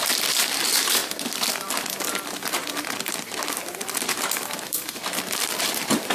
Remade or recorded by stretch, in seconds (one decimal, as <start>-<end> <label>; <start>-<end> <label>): 0.0-6.1 remade